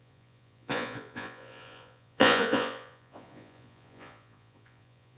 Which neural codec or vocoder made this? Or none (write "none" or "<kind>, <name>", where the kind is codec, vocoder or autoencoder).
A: vocoder, Vocos